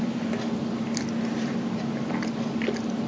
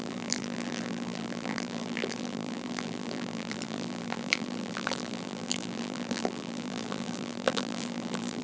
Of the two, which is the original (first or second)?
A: first